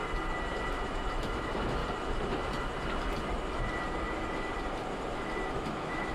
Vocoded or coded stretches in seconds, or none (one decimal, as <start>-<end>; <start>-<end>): 0.7-1.8; 5.5-6.1

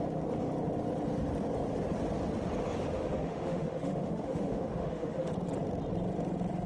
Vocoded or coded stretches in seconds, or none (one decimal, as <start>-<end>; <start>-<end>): 2.8-5.3

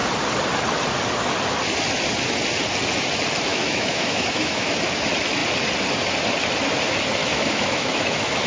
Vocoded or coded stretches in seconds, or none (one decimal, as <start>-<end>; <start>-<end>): 3.5-4.8; 7.2-8.5

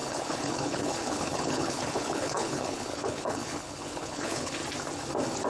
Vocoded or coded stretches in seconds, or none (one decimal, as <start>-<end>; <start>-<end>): 0.0-4.6

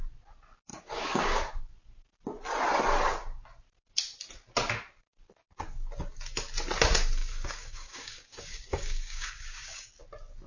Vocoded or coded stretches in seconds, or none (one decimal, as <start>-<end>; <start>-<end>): 0.7-1.6; 7.2-9.9